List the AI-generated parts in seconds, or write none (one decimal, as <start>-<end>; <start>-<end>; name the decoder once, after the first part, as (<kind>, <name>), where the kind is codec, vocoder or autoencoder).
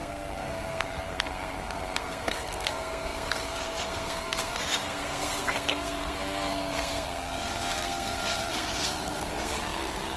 0.0-10.2 (codec, SNAC)